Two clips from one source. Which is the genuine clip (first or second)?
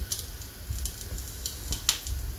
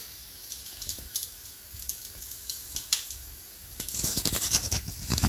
first